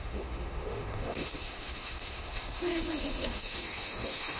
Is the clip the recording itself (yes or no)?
no